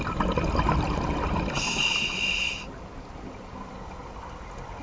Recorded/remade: recorded